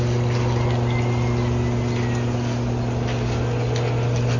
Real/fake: real